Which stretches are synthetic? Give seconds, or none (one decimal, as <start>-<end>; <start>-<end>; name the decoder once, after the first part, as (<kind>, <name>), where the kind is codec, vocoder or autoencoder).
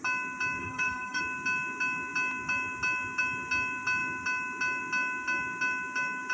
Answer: 0.6-1.2 (codec, SNAC)